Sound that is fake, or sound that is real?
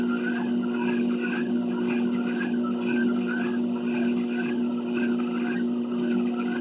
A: real